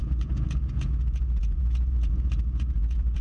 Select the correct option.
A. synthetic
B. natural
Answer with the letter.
A